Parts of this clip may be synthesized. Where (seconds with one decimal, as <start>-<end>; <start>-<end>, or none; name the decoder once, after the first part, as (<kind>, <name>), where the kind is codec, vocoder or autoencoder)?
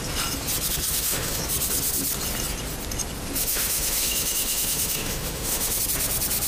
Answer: 0.9-1.4 (autoencoder, DAC-VAE); 3.4-5.8